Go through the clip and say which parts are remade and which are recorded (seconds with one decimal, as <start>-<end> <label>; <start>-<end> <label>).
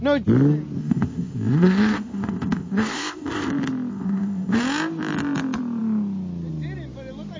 0.0-0.8 recorded; 0.8-3.5 remade; 3.5-3.9 recorded; 3.9-4.6 remade; 4.6-7.4 recorded